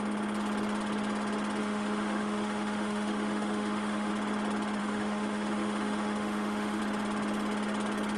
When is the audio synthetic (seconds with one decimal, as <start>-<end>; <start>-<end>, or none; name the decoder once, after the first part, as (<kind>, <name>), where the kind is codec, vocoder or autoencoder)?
1.6-4.1 (autoencoder, DAC-VAE); 4.8-6.8